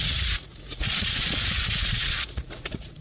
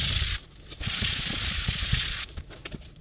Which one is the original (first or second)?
second